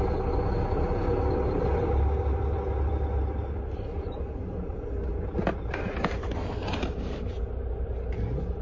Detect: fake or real real